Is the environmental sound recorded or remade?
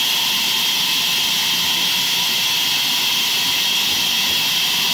recorded